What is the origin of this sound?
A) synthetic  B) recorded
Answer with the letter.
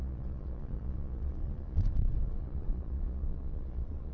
A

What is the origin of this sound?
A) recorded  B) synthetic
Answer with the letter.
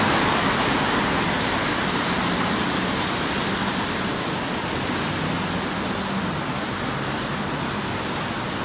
A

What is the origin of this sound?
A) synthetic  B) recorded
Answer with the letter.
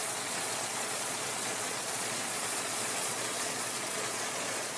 A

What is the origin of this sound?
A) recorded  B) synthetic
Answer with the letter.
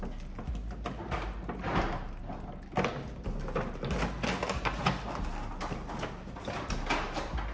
A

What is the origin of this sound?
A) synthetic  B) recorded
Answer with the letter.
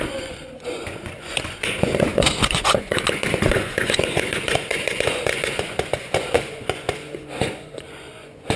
A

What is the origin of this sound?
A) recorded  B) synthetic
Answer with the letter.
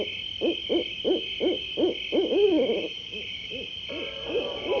A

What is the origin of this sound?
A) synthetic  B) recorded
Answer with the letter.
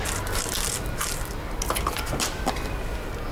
B